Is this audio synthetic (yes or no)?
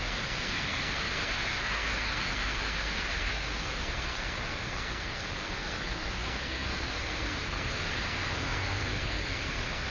yes